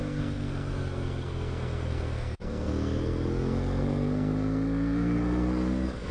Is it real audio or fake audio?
fake